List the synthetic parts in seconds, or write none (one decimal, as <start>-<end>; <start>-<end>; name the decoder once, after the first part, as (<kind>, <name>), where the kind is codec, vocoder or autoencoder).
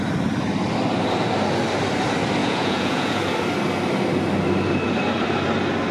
2.4-3.2 (vocoder, Vocos)